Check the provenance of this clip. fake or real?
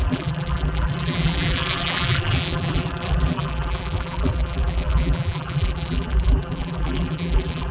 fake